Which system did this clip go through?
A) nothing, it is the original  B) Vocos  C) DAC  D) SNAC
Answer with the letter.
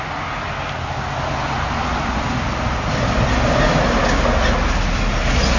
A